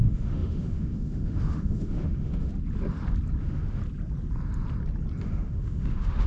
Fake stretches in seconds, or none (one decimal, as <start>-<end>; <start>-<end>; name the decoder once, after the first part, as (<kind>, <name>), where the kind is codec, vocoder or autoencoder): 0.0-2.5 (autoencoder, DAC-VAE); 3.4-3.8; 5.2-6.3